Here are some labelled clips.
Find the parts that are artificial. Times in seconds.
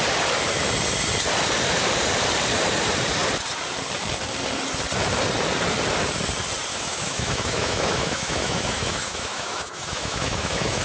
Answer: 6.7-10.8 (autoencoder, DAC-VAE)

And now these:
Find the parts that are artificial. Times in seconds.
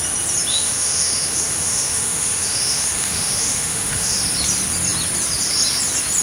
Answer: 0.5-4.2 (autoencoder, DAC-VAE)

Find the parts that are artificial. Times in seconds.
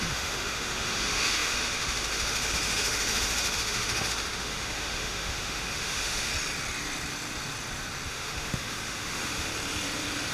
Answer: 0.0-6.3 (autoencoder, DAC-VAE); 8.1-9.5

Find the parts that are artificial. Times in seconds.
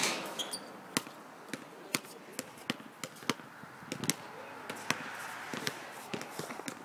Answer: 0.0-0.5 (autoencoder, DAC-VAE)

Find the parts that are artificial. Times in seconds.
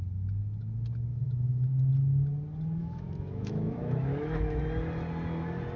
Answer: 1.1-1.7 (autoencoder, DAC-VAE); 2.8-4.6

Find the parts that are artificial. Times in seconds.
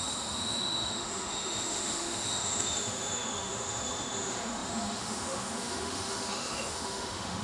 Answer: 0.0-7.4 (autoencoder, DAC-VAE)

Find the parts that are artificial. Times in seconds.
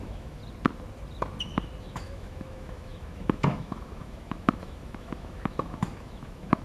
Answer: 0.0-0.4 (autoencoder, DAC-VAE); 1.8-6.6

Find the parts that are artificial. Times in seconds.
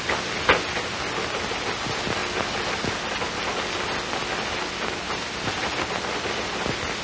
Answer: none